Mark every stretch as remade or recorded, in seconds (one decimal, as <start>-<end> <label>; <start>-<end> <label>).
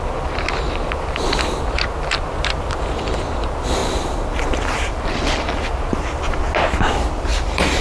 0.0-3.8 recorded; 3.8-5.9 remade; 5.9-7.3 recorded; 7.3-7.8 remade